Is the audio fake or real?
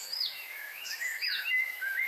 fake